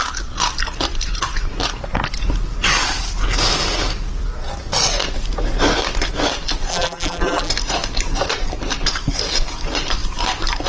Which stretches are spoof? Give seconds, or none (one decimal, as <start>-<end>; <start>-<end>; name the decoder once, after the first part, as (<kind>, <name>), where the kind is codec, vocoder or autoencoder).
6.7-7.5 (vocoder, BigVGAN v2)